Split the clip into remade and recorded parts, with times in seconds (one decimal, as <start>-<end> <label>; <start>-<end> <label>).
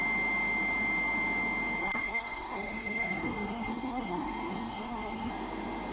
0.0-1.8 recorded; 1.8-5.3 remade; 5.3-5.9 recorded